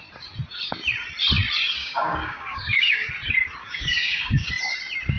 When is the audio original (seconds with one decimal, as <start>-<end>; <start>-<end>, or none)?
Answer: 0.0-1.8; 3.1-3.6; 4.5-5.2